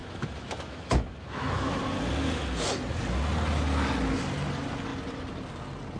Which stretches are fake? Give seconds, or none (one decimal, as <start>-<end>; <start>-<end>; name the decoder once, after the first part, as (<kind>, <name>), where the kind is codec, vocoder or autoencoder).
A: 0.0-1.8 (autoencoder, DAC-VAE)